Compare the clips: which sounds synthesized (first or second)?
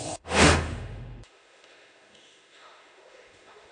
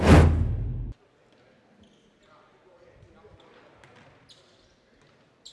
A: first